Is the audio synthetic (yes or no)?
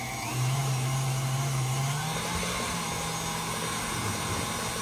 no